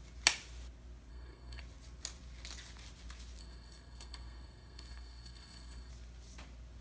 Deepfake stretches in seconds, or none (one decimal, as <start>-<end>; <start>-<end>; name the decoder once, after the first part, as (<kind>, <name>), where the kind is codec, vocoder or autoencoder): 1.1-1.6 (codec, SNAC); 3.4-5.9